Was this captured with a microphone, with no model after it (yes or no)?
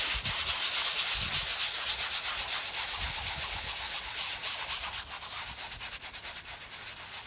yes